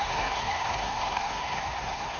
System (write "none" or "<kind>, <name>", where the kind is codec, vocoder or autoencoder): codec, SNAC